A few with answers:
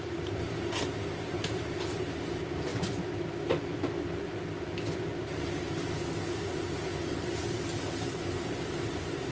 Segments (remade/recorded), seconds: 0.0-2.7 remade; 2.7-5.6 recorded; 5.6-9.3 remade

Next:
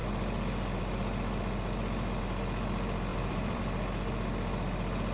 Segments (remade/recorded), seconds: 0.0-3.1 recorded; 3.1-3.6 remade; 3.6-5.1 recorded

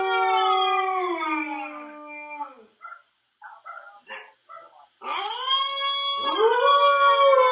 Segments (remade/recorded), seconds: 0.0-7.5 recorded

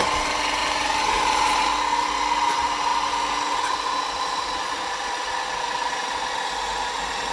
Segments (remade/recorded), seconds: 0.0-0.6 recorded; 0.6-1.6 remade; 1.6-7.3 recorded

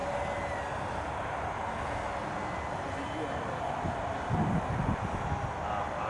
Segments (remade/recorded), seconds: 0.0-6.1 recorded

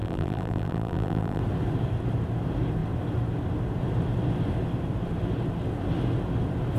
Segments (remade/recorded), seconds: 0.0-1.4 remade; 1.4-6.8 recorded

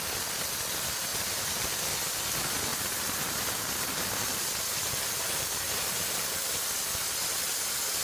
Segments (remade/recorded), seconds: 0.0-1.1 recorded; 1.1-1.7 remade; 1.7-8.0 recorded

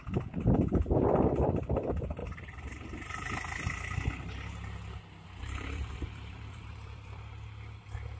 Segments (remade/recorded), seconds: 0.0-2.2 recorded; 2.2-3.1 remade; 3.1-5.4 recorded; 5.4-7.2 remade; 7.2-8.2 recorded